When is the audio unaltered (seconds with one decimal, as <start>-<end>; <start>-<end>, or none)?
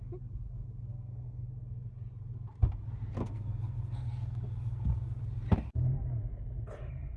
0.0-0.9; 1.5-3.2; 5.2-7.2